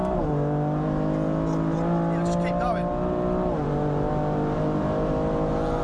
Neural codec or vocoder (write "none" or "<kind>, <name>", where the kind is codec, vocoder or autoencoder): none